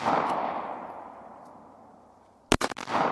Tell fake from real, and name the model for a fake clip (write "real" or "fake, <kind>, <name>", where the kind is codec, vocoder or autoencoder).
real